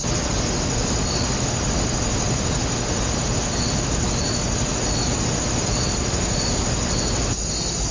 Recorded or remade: recorded